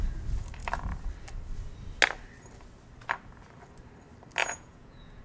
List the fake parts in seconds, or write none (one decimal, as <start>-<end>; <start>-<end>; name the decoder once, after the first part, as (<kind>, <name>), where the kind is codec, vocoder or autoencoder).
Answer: 4.4-5.2 (vocoder, Vocos)